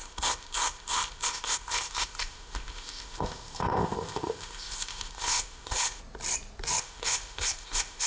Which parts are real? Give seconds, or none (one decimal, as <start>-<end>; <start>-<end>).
6.0-6.8